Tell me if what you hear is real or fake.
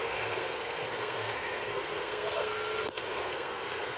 fake